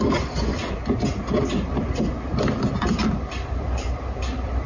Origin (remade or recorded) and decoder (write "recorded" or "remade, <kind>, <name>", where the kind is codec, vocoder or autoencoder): recorded